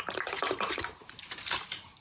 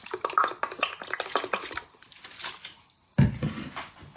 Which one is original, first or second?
second